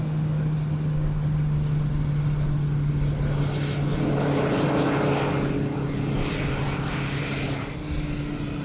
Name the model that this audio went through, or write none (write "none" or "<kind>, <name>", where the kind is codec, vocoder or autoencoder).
none